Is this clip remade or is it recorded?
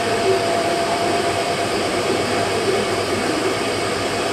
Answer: remade